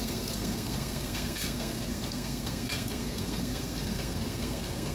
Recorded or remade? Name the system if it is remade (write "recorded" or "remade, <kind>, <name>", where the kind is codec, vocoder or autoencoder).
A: remade, codec, SNAC